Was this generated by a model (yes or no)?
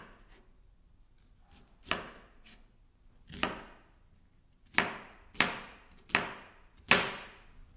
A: no